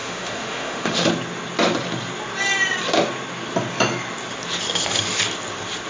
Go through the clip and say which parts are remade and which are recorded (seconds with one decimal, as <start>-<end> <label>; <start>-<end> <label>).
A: 0.0-1.1 remade; 1.1-5.9 recorded